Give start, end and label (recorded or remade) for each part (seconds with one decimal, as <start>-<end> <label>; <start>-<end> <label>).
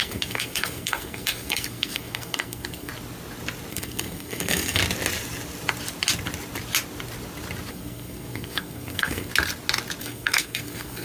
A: 0.0-2.9 remade; 2.9-3.7 recorded; 3.7-4.8 remade; 4.8-7.7 recorded; 7.7-9.3 remade; 9.3-10.0 recorded; 10.0-11.0 remade